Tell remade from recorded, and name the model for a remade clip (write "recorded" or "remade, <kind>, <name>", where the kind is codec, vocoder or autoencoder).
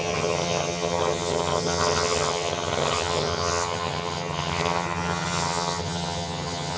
remade, vocoder, HiFi-GAN